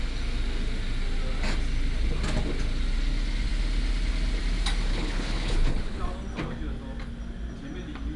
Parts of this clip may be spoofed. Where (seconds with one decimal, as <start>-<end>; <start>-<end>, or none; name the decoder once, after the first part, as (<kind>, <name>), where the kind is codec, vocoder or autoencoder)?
4.9-6.0 (codec, HILCodec)